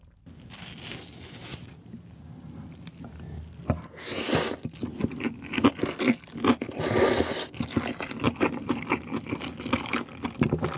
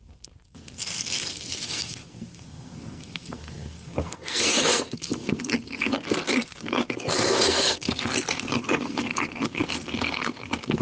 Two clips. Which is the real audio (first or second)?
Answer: first